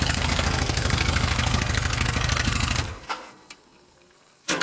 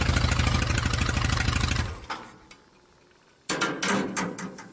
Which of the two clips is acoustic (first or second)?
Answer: second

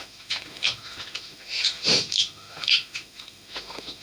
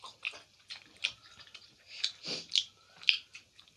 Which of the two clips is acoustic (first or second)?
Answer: second